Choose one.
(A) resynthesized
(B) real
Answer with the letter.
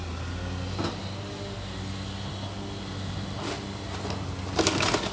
B